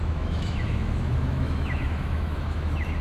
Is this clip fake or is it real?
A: fake